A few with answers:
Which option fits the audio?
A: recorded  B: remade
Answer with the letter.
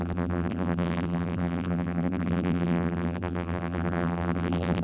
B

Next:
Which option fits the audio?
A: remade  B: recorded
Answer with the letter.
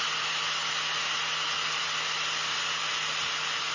B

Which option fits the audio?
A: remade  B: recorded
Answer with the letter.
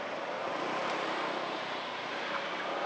A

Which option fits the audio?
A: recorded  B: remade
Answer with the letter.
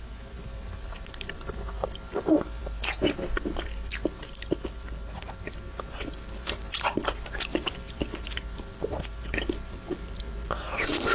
A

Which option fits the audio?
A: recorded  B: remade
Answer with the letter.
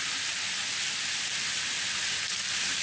A